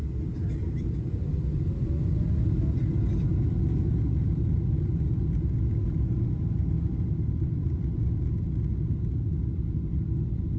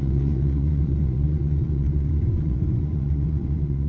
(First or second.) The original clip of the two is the first